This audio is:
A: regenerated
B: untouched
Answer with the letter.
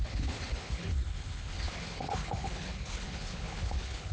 A